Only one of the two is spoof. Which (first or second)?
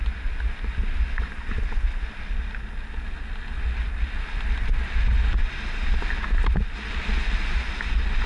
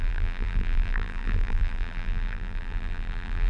second